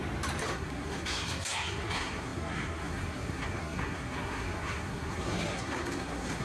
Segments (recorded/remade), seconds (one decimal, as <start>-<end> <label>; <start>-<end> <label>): 0.0-0.5 recorded; 0.5-6.4 remade